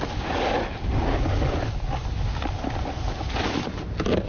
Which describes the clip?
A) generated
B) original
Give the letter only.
B